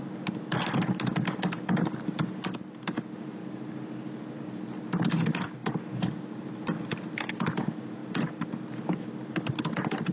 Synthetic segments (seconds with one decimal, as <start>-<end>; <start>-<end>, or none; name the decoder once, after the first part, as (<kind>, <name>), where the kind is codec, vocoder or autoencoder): none

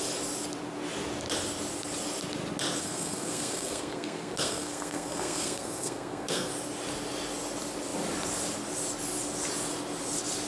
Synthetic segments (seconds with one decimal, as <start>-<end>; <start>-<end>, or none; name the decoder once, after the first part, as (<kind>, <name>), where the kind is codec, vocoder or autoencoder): 2.8-6.5 (codec, SNAC)

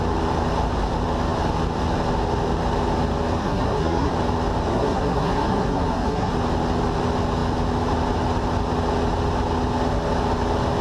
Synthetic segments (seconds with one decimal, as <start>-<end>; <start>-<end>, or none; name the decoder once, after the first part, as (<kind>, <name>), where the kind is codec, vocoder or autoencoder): 3.4-4.1 (codec, SNAC); 4.7-6.3

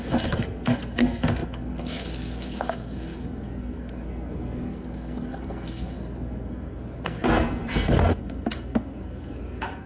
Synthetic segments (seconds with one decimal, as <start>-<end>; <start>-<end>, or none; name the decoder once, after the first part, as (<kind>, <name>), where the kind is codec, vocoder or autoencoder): 0.0-9.9 (codec, SNAC)

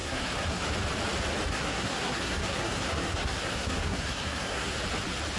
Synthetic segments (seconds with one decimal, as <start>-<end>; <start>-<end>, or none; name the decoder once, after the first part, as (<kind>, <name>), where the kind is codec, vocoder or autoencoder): 0.0-0.7 (codec, SNAC); 1.5-4.7

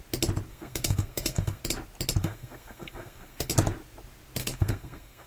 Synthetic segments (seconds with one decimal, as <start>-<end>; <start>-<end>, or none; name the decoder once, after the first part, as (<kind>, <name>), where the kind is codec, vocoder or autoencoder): 0.5-1.6 (codec, SNAC); 2.2-3.5; 4.4-5.3

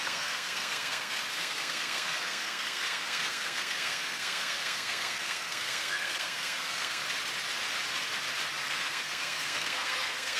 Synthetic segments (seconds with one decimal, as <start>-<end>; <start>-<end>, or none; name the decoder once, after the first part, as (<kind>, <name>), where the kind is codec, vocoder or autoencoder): 0.0-7.0 (codec, SNAC); 8.6-10.4

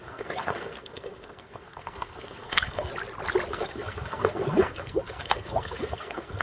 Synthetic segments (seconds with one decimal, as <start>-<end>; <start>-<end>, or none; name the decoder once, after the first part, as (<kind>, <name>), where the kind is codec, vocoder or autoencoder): 0.0-2.9 (codec, SNAC); 3.5-6.4